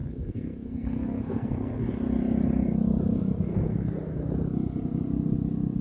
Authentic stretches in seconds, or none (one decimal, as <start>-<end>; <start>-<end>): 1.9-3.5; 4.3-5.8